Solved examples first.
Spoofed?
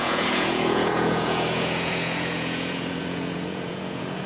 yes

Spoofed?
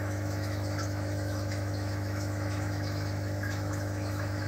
yes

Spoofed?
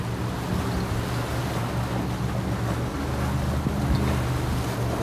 no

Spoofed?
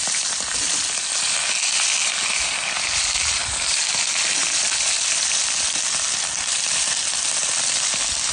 no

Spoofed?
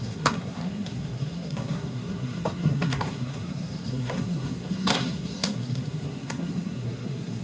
yes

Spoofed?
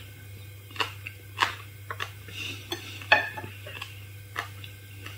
no